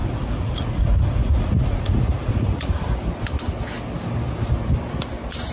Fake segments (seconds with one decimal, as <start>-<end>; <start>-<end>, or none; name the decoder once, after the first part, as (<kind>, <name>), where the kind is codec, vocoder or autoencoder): 0.0-2.8 (vocoder, Vocos)